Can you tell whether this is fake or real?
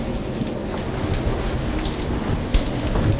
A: real